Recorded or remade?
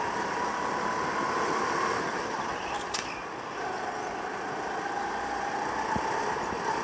recorded